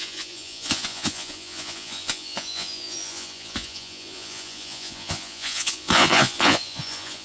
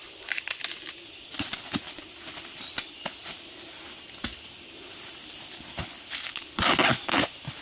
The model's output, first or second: first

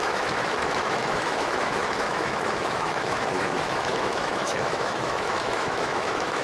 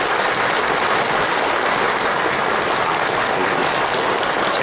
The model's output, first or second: first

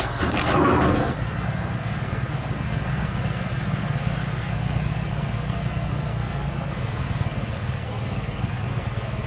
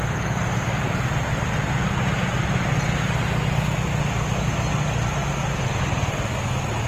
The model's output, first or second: first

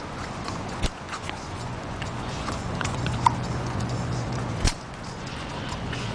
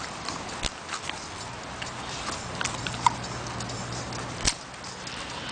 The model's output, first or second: first